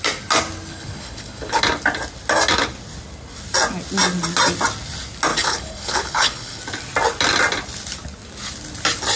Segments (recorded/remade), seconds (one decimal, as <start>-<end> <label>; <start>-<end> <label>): 0.0-0.7 recorded; 0.7-1.6 remade; 1.6-5.3 recorded; 5.3-6.6 remade; 6.6-9.2 recorded